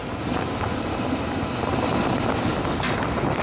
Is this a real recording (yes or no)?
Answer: yes